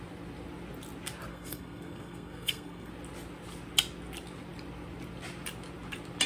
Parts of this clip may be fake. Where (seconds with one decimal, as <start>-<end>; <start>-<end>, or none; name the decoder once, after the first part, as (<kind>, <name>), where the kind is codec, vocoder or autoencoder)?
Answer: 1.3-2.9 (codec, SNAC)